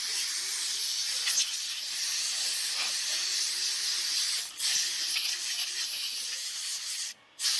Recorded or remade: recorded